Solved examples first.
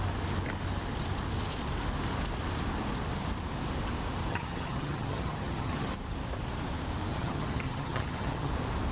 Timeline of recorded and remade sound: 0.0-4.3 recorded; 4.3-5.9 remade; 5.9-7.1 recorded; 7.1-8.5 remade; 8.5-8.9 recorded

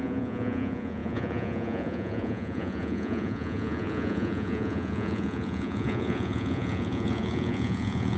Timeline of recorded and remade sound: 0.0-8.2 remade

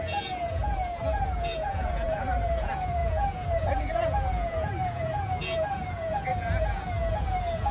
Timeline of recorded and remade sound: 0.0-7.7 remade

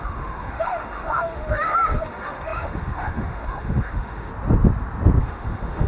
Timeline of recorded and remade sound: 0.0-4.3 remade; 4.3-5.2 recorded; 5.2-5.9 remade

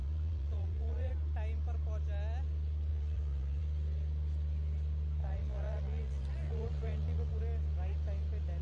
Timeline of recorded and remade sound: 0.0-1.1 remade; 1.1-2.9 recorded; 2.9-3.6 remade; 3.6-5.2 recorded; 5.2-7.3 remade; 7.3-8.6 recorded

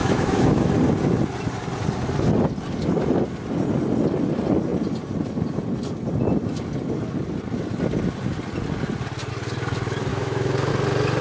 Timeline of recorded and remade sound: 0.0-0.7 remade; 0.7-10.1 recorded; 10.1-10.7 remade; 10.7-11.2 recorded

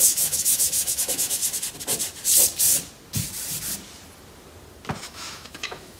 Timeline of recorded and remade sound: 0.0-1.4 remade; 1.4-5.0 recorded; 5.0-6.0 remade